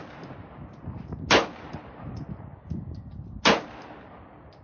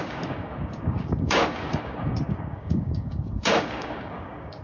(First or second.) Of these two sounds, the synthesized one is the second